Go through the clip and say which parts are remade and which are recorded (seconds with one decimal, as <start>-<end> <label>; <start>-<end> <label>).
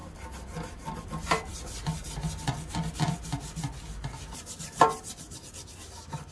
0.0-6.3 recorded